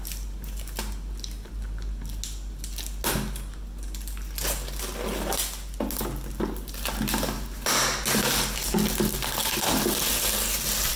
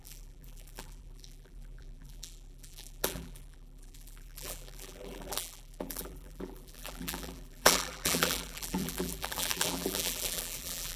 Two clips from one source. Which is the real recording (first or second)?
first